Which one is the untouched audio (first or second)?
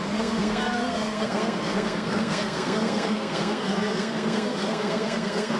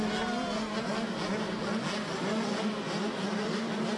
second